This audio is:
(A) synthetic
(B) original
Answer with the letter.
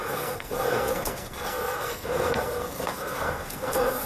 A